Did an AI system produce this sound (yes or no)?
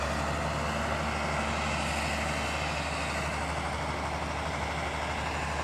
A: no